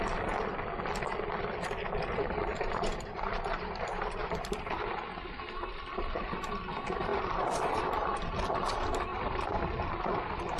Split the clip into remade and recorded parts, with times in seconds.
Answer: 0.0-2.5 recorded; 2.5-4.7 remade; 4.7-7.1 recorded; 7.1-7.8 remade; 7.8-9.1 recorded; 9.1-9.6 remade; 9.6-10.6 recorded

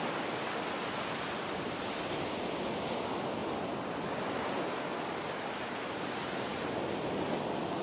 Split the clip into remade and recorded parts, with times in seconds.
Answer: 0.0-7.8 recorded

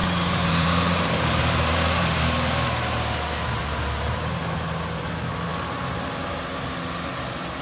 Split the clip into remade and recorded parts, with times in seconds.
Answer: 0.0-2.2 remade; 2.2-3.6 recorded; 3.6-4.4 remade; 4.4-5.5 recorded; 5.5-6.1 remade; 6.1-7.6 recorded

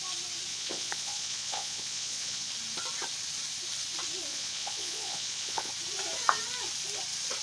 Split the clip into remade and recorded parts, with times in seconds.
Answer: 0.0-0.5 recorded; 0.5-2.5 remade; 2.5-4.3 recorded; 4.3-5.7 remade; 5.7-7.4 recorded

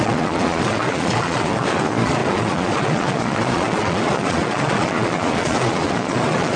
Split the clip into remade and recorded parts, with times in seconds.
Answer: 0.0-6.6 remade

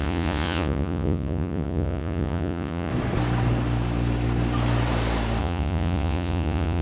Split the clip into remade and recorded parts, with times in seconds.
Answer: 0.0-2.9 remade; 2.9-5.4 recorded; 5.4-6.8 remade

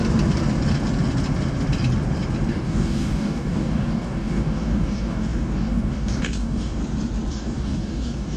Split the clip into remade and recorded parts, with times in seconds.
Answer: 0.0-2.5 recorded; 2.5-6.8 remade; 6.8-7.3 recorded; 7.3-8.4 remade